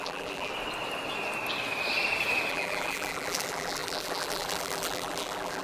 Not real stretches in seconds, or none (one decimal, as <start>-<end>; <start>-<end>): 0.0-0.5; 2.5-5.6